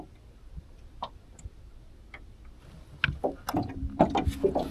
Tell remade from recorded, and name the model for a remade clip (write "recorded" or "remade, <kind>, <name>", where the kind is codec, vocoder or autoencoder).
recorded